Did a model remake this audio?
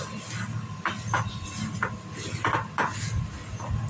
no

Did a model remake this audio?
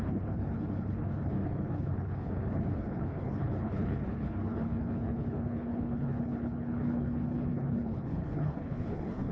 yes